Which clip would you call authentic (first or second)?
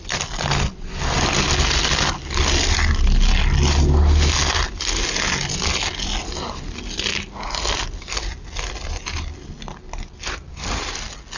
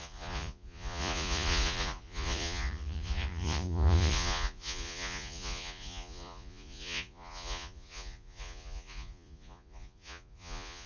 first